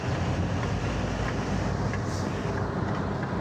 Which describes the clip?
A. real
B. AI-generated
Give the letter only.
A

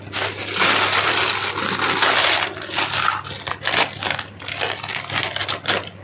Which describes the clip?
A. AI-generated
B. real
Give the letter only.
B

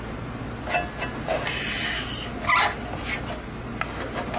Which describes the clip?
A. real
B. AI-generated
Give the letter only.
A